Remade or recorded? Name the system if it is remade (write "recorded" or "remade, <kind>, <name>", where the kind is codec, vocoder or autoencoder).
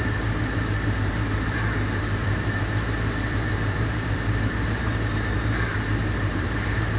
remade, vocoder, BigVGAN v2